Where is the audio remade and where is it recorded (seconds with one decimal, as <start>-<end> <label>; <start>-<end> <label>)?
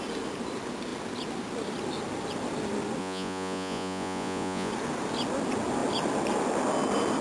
0.0-3.0 recorded; 3.0-4.7 remade; 4.7-7.2 recorded